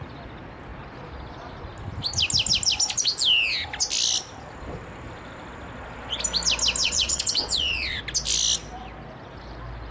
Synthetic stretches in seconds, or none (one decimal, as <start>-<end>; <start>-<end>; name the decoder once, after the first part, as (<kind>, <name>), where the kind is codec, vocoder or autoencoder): 6.8-8.0 (vocoder, WaveNeXt)